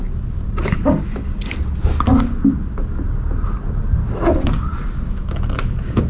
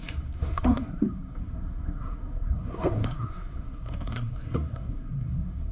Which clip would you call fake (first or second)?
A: second